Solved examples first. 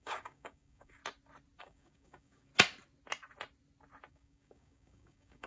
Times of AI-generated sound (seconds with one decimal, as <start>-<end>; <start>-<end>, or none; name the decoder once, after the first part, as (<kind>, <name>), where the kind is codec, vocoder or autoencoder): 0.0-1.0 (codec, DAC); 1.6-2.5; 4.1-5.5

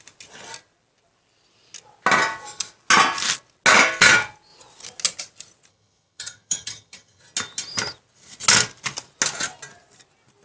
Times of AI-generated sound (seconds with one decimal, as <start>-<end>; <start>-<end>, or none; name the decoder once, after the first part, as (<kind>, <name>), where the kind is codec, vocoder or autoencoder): 5.7-7.2 (vocoder, HiFi-GAN)

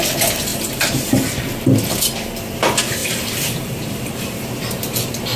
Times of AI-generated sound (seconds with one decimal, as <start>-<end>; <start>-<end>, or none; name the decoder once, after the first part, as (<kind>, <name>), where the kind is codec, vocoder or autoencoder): 0.5-1.1 (vocoder, BigVGAN v2); 3.0-5.4